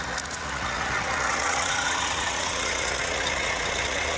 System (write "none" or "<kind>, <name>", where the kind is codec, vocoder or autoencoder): vocoder, Vocos